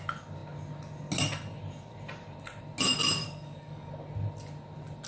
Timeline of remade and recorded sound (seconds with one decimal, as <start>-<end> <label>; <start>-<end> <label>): 0.0-3.2 recorded; 3.2-3.9 remade; 3.9-5.1 recorded